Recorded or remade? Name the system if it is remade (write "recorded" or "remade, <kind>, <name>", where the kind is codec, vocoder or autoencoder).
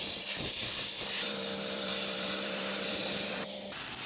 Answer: remade, vocoder, BigVGAN v2